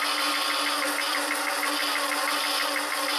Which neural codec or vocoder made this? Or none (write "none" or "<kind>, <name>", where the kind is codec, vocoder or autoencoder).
none